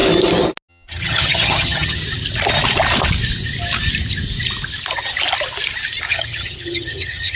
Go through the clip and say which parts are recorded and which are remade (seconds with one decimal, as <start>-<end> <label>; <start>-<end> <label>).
0.0-0.7 recorded; 0.7-2.0 remade; 2.0-6.1 recorded; 6.1-7.4 remade